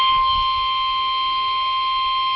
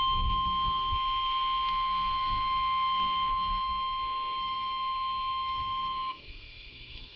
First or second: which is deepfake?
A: second